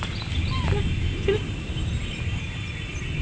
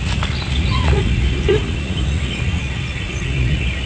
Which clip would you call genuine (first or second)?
first